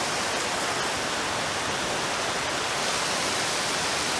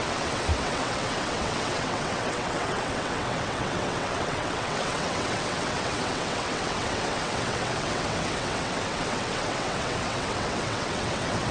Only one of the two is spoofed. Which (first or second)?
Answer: second